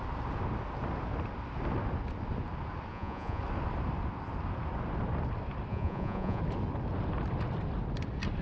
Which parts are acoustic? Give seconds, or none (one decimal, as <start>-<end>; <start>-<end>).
0.0-2.9; 3.4-5.7; 6.4-8.4